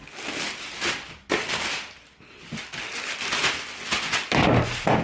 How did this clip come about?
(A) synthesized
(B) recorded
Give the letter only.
B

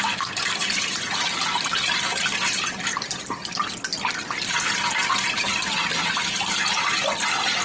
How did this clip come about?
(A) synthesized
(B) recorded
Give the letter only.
B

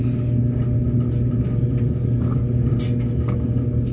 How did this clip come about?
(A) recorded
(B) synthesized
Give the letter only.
A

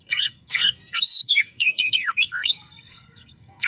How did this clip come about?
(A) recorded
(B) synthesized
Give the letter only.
B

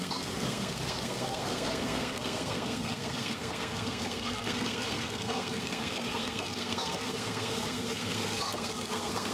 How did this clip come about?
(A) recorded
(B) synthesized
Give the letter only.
B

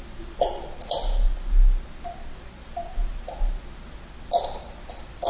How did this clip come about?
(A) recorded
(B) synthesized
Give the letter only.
A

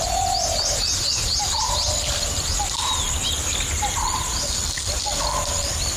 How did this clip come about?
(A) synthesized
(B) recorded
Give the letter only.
B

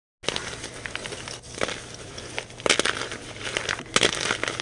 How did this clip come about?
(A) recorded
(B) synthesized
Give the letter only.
A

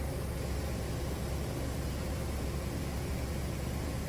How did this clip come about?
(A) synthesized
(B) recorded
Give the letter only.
B